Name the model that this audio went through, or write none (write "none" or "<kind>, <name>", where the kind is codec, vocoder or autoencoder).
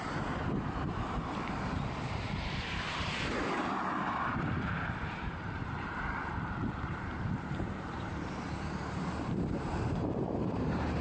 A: vocoder, BigVGAN v2